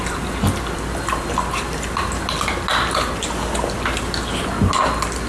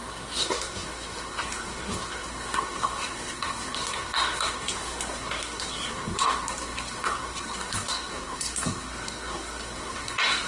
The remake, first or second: second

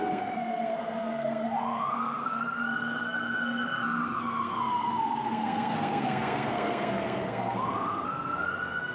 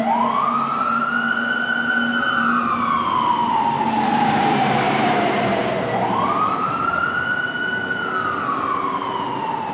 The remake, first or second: first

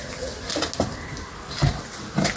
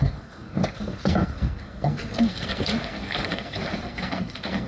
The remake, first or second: second